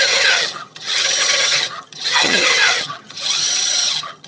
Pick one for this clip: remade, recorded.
remade